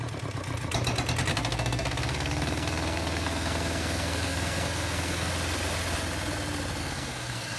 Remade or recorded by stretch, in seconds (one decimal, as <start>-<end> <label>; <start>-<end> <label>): 0.0-1.3 recorded; 1.3-5.3 remade; 5.3-6.8 recorded; 6.8-7.6 remade